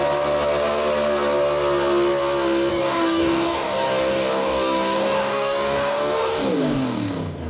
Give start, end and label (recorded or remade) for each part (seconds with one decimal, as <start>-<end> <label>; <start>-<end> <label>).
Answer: 0.0-2.7 recorded; 2.7-7.5 remade